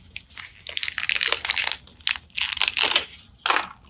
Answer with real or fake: real